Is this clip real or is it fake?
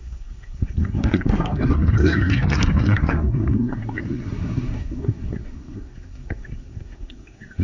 fake